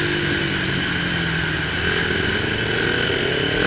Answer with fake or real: real